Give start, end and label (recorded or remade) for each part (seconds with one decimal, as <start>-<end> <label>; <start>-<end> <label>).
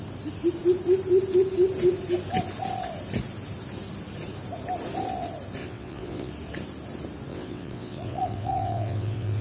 0.0-5.6 recorded; 5.6-6.3 remade; 6.3-7.3 recorded; 7.3-9.4 remade